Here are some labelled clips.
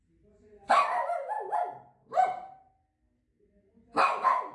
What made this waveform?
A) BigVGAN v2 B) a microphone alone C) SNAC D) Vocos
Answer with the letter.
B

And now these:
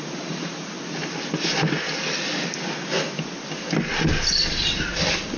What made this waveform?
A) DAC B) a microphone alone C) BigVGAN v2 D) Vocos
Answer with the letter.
B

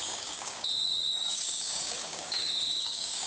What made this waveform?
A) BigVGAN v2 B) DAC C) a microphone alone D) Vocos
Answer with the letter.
B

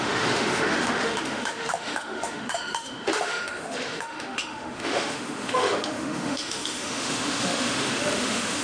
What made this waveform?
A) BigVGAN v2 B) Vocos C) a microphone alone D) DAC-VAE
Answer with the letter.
D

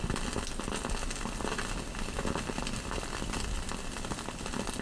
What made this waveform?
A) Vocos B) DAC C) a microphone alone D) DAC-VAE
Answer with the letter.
C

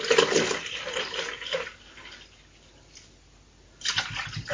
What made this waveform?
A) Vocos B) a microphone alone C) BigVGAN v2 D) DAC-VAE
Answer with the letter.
B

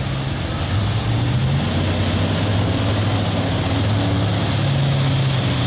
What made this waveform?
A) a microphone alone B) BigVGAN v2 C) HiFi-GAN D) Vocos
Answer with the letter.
A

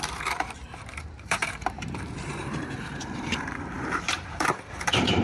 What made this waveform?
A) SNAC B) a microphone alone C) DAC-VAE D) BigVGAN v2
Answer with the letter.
D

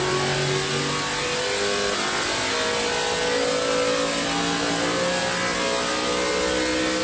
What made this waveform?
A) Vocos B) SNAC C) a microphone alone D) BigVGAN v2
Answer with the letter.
C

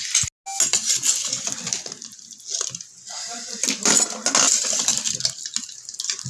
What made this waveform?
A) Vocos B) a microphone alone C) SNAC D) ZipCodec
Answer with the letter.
B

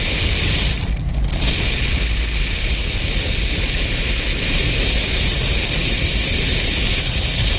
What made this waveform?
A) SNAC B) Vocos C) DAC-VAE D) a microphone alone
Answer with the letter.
D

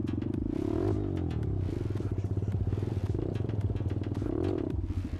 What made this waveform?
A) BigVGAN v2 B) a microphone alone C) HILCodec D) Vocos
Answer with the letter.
B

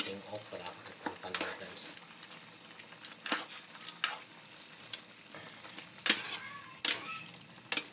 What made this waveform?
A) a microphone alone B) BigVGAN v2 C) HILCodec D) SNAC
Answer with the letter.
A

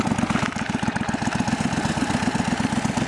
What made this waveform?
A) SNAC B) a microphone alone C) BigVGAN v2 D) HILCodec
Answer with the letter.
B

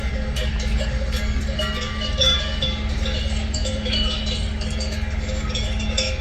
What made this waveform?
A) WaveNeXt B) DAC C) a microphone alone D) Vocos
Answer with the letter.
B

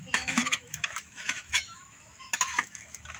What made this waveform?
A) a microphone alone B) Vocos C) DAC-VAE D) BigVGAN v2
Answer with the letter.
C